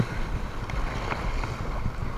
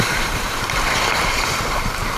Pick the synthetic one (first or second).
second